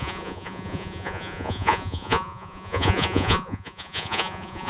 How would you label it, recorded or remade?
remade